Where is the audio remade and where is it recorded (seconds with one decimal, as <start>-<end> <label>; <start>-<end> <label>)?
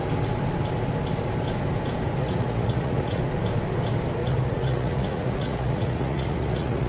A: 0.0-2.2 recorded; 2.2-3.2 remade; 3.2-4.2 recorded; 4.2-6.9 remade